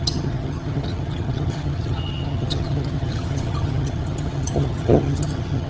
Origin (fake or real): fake